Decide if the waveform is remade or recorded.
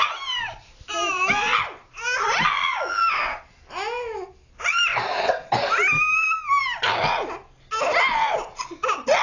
recorded